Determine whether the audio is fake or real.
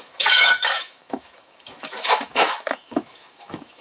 fake